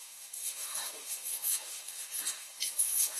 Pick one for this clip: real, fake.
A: fake